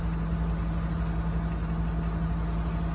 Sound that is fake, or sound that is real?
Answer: real